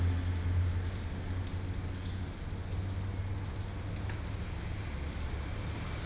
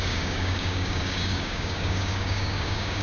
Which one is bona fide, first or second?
first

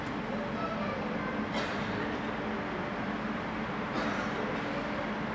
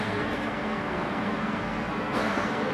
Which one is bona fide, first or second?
first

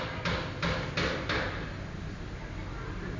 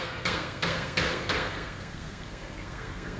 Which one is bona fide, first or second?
first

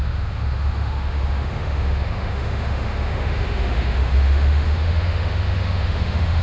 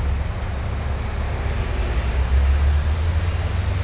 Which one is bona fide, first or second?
second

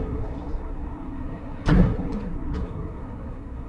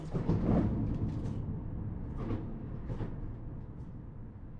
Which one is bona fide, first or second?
second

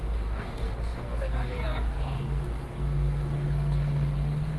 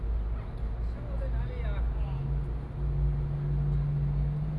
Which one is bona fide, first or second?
second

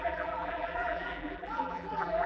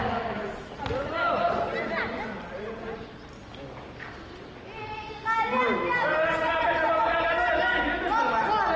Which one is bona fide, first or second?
second